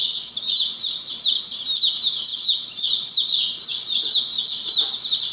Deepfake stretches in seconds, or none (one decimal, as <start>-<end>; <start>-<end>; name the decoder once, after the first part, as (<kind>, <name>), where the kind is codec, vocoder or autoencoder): none